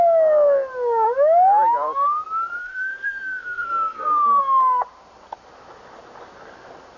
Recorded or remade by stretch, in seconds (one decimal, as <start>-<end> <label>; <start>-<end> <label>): 0.0-2.6 recorded; 2.6-4.4 remade; 4.4-7.0 recorded